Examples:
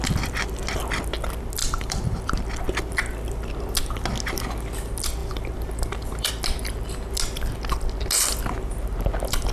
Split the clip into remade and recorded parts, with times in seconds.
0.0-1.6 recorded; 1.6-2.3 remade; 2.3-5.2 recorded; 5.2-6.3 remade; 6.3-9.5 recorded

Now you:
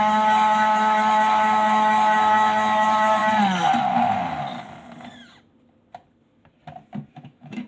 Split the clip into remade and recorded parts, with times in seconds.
0.0-3.2 remade; 3.2-7.1 recorded; 7.1-7.7 remade